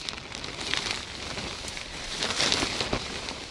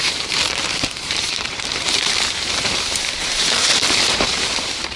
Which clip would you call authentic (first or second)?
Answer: first